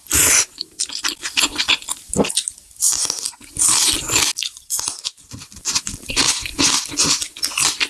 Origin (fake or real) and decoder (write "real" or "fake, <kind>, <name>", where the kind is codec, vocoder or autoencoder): real